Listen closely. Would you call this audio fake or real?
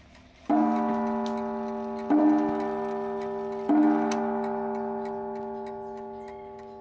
real